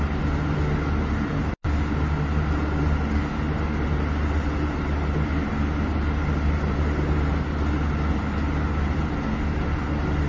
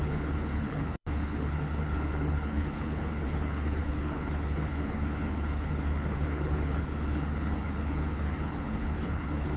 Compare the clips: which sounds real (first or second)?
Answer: first